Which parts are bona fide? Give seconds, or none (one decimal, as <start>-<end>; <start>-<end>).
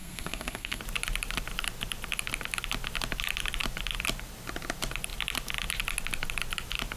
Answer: 0.8-7.0